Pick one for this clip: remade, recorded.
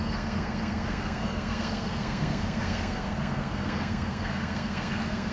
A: remade